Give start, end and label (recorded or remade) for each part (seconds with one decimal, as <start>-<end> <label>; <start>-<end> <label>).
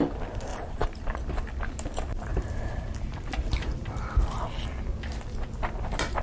0.0-0.5 recorded; 0.5-1.2 remade; 1.2-2.3 recorded; 2.3-4.4 remade; 4.4-6.2 recorded